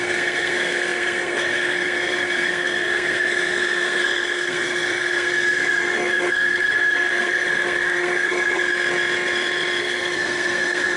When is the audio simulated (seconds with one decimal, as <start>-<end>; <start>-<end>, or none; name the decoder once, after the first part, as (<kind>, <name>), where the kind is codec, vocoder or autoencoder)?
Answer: 0.0-8.7 (codec, SNAC); 9.8-11.0